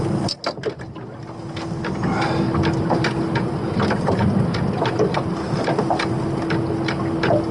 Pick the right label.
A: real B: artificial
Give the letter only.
A